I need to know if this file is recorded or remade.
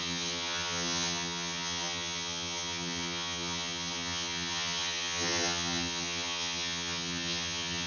remade